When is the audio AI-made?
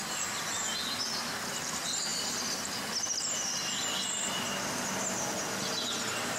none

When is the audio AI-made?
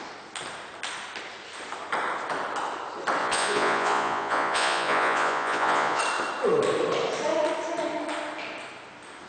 3.2-6.0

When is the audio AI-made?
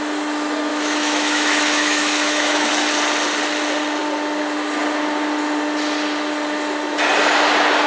0.7-2.7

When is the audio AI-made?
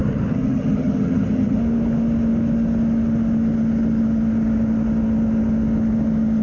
0.0-1.6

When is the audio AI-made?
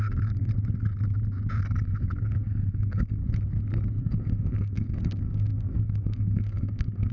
0.0-0.5; 1.6-3.2; 4.0-7.1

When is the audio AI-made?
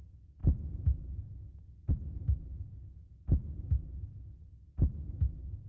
none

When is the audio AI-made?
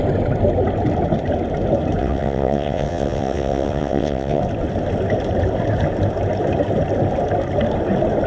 2.0-4.4